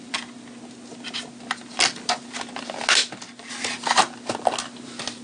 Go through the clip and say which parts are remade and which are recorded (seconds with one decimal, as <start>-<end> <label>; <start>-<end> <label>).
0.0-5.2 recorded